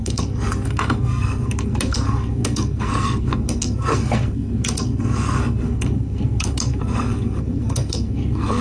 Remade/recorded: remade